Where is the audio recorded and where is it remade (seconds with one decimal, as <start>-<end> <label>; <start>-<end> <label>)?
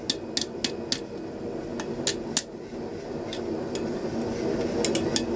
0.0-5.4 recorded